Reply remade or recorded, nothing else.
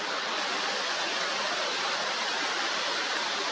recorded